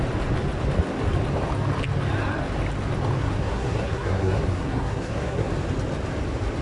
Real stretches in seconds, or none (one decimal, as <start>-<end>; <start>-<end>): 0.0-3.2; 5.5-6.6